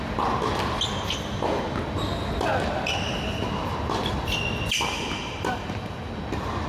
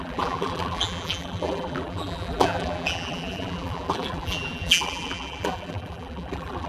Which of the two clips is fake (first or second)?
second